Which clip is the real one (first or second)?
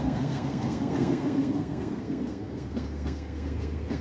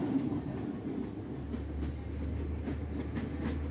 second